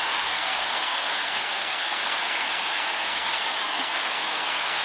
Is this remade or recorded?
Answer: remade